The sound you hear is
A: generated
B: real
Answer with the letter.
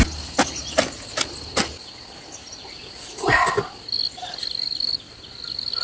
B